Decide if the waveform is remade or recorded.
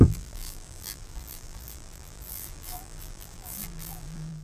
remade